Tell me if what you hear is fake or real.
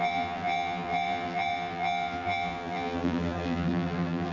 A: fake